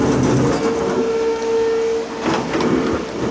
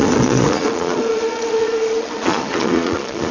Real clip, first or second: first